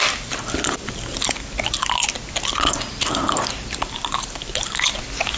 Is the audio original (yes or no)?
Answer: yes